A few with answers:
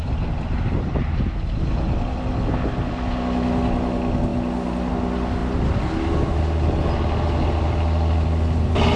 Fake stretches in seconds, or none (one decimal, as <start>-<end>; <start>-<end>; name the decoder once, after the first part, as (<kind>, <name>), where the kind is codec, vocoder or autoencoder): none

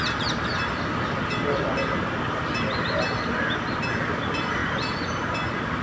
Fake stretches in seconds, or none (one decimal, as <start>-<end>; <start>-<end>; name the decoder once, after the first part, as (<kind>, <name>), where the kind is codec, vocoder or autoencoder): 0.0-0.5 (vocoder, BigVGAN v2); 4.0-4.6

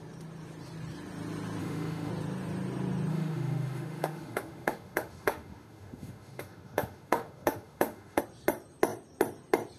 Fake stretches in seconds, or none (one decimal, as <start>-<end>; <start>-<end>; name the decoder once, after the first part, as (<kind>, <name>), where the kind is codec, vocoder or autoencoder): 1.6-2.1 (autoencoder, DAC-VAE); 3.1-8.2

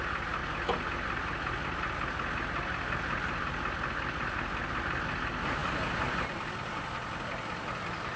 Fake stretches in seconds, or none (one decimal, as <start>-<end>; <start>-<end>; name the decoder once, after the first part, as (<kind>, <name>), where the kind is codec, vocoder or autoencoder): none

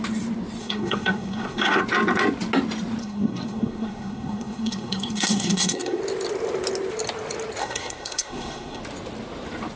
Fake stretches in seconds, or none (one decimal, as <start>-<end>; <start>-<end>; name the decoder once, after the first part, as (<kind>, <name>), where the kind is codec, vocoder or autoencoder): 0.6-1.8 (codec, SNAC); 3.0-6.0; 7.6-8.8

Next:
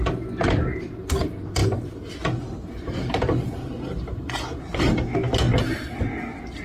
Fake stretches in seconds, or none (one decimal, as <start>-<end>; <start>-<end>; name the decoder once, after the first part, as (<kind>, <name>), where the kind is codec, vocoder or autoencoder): none